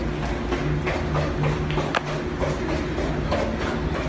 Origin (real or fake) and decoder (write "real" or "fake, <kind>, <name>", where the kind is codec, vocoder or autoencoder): real